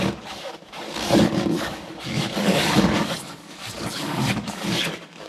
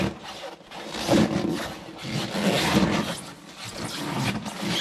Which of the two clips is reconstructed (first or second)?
first